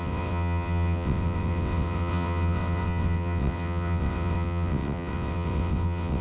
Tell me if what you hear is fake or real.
fake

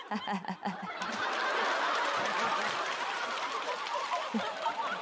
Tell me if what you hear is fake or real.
real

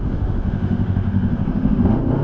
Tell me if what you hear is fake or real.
fake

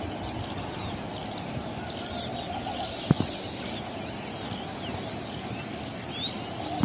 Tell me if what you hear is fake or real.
real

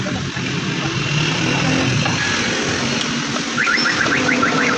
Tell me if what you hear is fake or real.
real